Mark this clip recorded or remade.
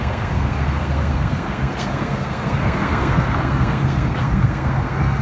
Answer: remade